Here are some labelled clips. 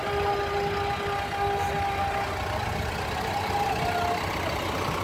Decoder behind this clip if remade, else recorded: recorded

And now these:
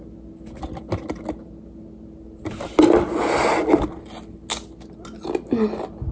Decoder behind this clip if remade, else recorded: recorded